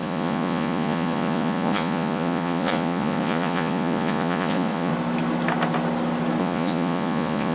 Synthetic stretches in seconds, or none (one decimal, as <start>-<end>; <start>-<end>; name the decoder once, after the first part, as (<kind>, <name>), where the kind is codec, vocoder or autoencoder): 0.0-4.9 (vocoder, Vocos); 6.4-7.5